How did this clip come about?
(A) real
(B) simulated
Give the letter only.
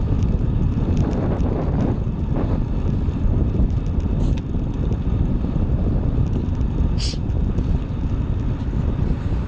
A